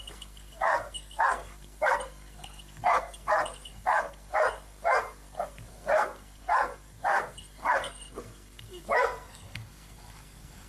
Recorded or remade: remade